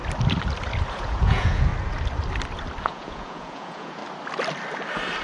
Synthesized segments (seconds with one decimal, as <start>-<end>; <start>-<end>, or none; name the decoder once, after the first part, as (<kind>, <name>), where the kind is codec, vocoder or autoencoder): 0.9-1.7 (vocoder, Vocos); 2.8-4.0